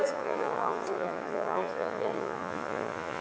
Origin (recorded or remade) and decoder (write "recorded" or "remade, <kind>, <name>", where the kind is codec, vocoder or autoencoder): remade, vocoder, Vocos